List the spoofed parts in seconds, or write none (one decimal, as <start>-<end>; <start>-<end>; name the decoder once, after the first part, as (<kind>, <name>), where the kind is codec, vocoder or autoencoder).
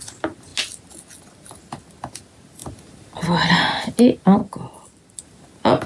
none